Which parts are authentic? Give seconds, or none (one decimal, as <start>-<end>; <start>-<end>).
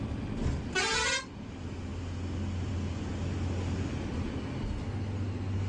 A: 0.0-5.7